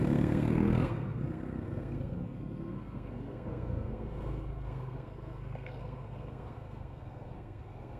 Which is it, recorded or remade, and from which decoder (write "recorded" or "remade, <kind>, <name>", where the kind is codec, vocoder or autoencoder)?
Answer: remade, codec, SNAC